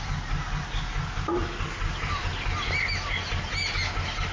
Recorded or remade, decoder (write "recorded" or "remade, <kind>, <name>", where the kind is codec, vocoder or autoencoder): recorded